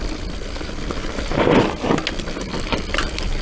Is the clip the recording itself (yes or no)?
yes